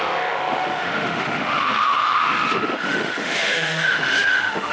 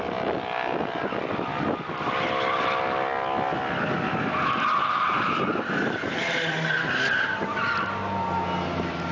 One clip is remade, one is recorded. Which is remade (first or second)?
first